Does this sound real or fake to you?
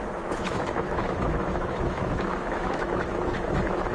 fake